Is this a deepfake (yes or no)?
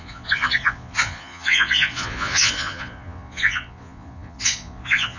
yes